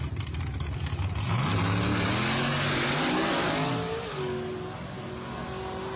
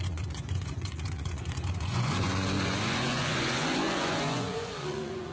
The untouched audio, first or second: first